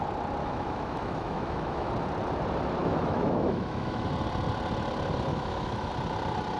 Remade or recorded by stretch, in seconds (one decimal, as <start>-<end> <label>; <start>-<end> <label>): 0.0-0.4 recorded; 0.4-1.9 remade; 1.9-2.8 recorded; 2.8-4.1 remade; 4.1-5.3 recorded; 5.3-5.9 remade; 5.9-6.6 recorded